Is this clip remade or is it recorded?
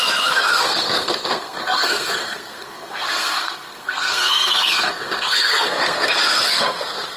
remade